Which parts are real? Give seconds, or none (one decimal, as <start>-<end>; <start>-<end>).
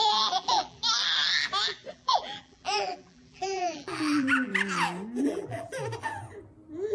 0.8-1.9; 4.5-5.2; 5.8-6.9